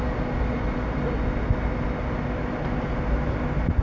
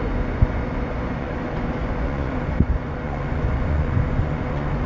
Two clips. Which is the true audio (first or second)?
first